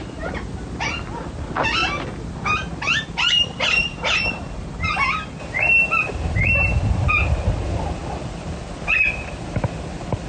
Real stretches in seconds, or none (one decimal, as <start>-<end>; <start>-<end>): 0.0-10.3